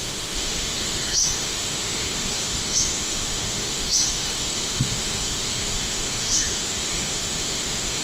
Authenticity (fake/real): fake